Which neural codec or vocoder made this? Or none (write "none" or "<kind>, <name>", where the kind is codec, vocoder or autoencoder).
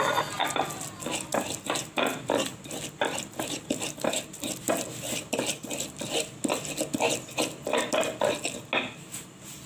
none